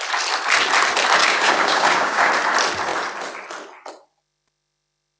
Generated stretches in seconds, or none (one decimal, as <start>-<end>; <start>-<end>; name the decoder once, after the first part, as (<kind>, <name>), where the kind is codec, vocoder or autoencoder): 1.2-2.3 (codec, DAC)